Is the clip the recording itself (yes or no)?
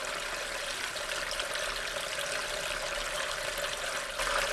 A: yes